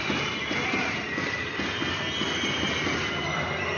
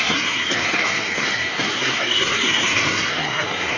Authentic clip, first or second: first